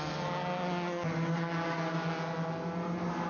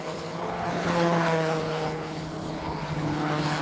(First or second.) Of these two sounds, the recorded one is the first